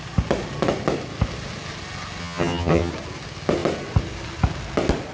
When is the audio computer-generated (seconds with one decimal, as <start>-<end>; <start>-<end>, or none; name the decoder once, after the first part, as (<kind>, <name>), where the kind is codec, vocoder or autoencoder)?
2.2-2.9 (vocoder, HiFi-GAN)